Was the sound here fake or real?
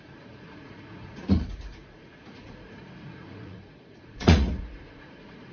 fake